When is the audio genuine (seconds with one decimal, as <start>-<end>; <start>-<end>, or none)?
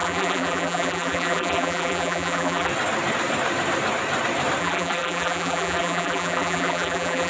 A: 2.7-4.6